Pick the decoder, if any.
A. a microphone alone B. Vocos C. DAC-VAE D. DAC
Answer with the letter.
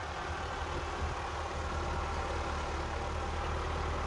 A